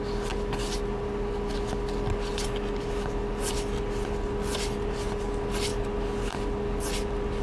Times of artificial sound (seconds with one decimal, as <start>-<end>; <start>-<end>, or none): none